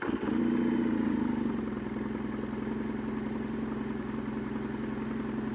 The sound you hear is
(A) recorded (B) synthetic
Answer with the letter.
A